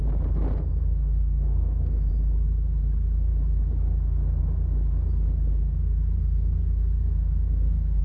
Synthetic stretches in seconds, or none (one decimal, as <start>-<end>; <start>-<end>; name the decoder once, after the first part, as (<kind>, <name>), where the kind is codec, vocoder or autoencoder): 0.8-2.1 (codec, SNAC); 7.0-8.0